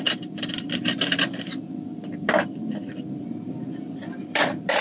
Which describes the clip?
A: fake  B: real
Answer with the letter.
A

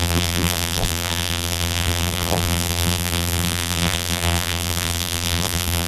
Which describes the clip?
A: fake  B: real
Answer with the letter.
A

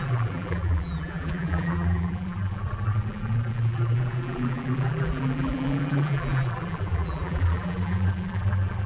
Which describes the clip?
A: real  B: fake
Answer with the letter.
B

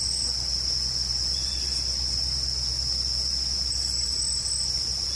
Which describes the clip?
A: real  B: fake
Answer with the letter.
B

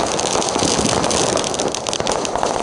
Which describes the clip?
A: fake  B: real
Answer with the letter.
B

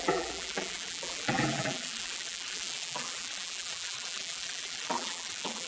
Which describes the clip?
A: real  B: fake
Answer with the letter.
B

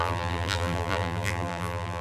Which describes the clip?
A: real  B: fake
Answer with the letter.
B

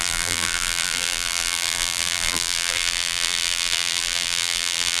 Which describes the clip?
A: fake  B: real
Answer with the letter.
A